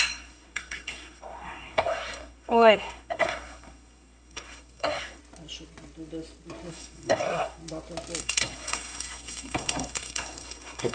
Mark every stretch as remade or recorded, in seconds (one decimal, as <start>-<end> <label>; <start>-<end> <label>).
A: 0.0-5.2 remade; 5.2-6.7 recorded; 6.7-7.6 remade; 7.6-8.2 recorded; 8.2-10.9 remade